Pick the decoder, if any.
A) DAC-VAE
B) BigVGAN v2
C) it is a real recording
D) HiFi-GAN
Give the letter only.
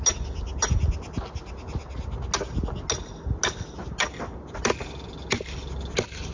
C